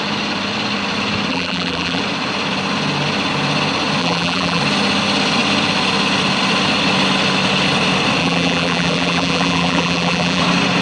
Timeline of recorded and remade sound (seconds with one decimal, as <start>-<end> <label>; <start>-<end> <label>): 0.0-1.3 recorded; 1.3-2.0 remade; 2.0-4.0 recorded; 4.0-4.6 remade; 4.6-8.2 recorded; 8.2-10.4 remade; 10.4-10.8 recorded